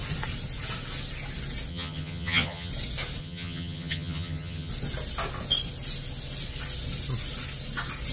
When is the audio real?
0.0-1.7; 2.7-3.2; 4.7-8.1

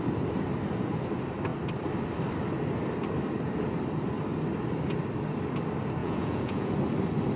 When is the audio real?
0.0-6.0; 6.7-7.4

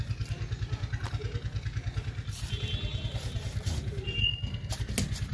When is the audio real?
0.0-4.2; 4.7-5.3

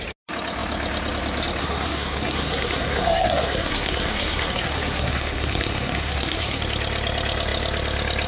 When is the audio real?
0.0-1.6; 6.6-8.3

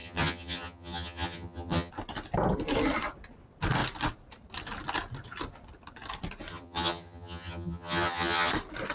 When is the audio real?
1.9-6.5; 8.5-8.9

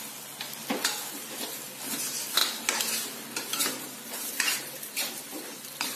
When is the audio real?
0.0-2.4; 5.1-6.0

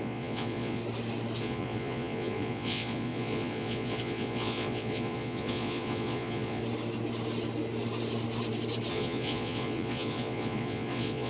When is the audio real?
0.8-1.4; 6.6-8.9

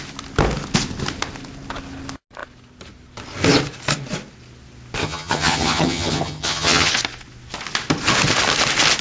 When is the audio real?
0.0-5.0; 6.9-9.0